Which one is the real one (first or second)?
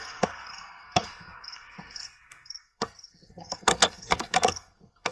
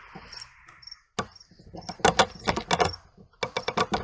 second